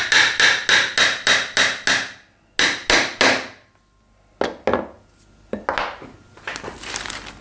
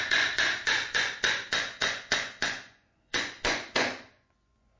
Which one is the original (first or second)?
first